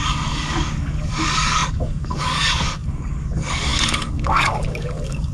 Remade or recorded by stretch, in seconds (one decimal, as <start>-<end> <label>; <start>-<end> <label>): 0.0-5.3 remade